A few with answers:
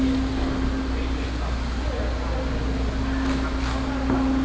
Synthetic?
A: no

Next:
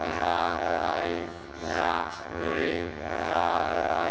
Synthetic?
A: yes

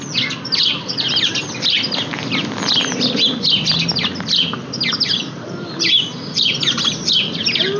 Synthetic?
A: no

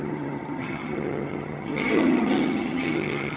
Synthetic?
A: yes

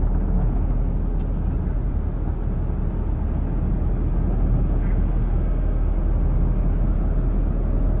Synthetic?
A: no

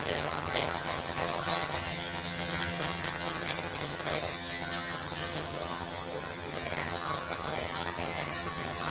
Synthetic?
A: yes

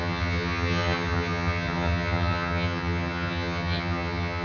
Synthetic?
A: yes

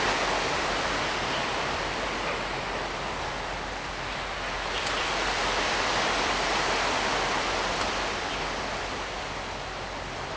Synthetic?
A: no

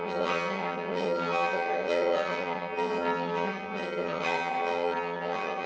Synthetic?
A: yes